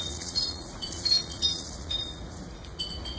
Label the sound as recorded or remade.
remade